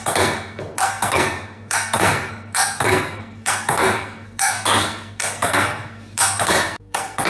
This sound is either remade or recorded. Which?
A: remade